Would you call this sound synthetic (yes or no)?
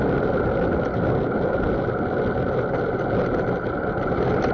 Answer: no